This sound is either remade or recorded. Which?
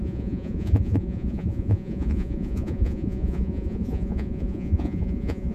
remade